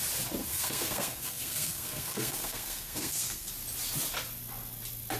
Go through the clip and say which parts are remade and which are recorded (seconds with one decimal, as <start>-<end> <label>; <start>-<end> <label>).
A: 0.0-0.4 recorded; 0.4-3.5 remade; 3.5-5.2 recorded